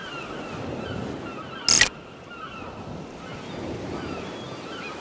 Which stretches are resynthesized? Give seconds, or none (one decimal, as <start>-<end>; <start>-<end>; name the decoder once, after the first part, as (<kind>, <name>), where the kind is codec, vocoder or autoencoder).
none